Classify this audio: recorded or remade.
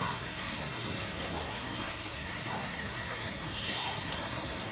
remade